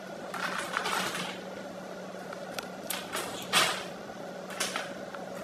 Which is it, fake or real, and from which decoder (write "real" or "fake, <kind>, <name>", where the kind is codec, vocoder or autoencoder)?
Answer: real